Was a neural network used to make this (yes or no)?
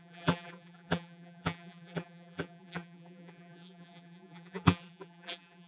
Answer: yes